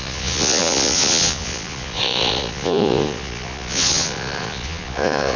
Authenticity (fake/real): fake